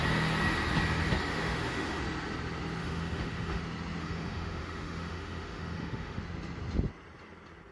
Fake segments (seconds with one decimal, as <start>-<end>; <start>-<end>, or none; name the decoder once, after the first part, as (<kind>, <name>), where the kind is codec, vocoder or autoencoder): 1.3-2.0 (autoencoder, DAC-VAE); 2.8-3.6; 4.0-6.2

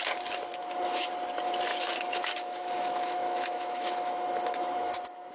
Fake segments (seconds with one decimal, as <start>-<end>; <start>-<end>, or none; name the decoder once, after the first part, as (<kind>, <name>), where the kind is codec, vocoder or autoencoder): 0.5-1.1 (autoencoder, DAC-VAE); 1.7-5.3

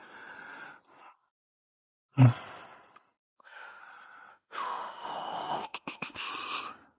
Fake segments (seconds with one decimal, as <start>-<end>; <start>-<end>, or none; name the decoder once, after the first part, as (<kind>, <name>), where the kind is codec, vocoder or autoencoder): 3.2-3.8 (autoencoder, DAC-VAE); 4.3-6.3